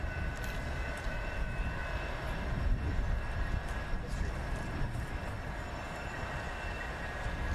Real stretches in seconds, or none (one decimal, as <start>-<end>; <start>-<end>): 0.0-7.5